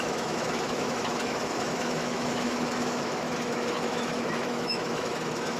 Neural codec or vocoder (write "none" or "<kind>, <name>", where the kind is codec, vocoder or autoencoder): autoencoder, DAC-VAE